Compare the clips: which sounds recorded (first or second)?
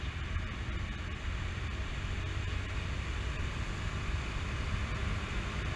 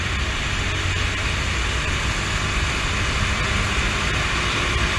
second